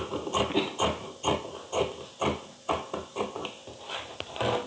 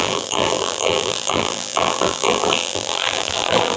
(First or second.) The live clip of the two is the first